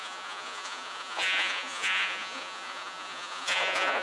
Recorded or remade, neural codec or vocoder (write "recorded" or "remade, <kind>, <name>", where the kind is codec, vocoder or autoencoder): remade, vocoder, Vocos